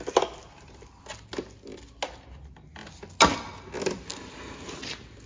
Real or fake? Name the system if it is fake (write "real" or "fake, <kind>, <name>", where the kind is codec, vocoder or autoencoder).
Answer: real